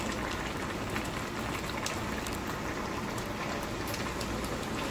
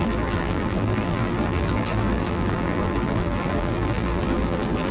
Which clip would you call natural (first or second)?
first